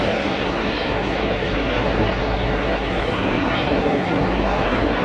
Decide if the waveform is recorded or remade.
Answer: remade